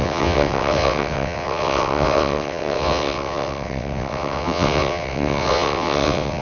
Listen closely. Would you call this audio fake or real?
fake